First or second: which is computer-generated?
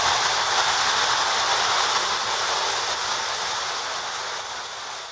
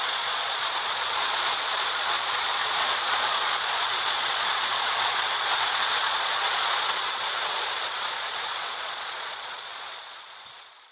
second